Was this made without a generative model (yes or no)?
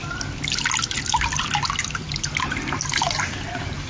yes